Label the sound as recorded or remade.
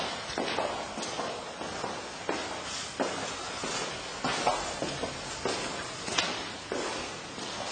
recorded